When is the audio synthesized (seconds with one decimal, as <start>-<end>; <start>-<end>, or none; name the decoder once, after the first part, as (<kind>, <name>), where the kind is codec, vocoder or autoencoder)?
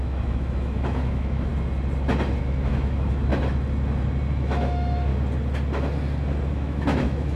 0.0-1.5 (autoencoder, DAC-VAE); 2.4-3.3; 4.3-5.1; 6.5-7.4